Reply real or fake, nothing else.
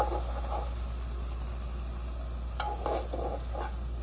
real